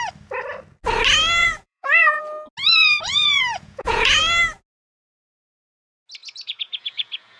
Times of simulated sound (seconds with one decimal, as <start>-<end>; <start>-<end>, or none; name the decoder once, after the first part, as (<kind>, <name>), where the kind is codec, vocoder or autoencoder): 1.4-2.2 (vocoder, Vocos); 2.7-4.2; 6.2-7.4